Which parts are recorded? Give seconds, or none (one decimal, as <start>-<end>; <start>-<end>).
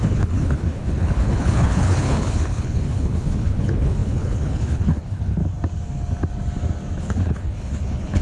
5.4-7.0